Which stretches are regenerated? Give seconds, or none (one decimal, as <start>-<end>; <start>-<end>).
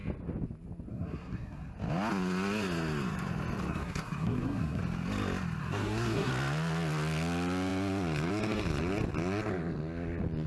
0.9-1.7; 3.7-4.8; 5.6-6.3